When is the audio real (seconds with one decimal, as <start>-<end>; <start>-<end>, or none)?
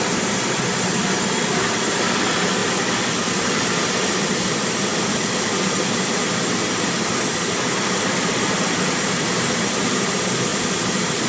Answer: 2.6-3.1; 4.9-6.5